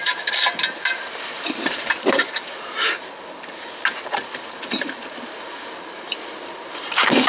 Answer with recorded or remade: remade